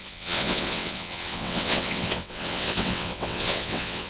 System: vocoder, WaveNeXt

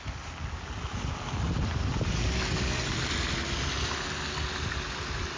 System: none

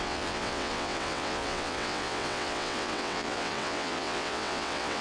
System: vocoder, WaveNeXt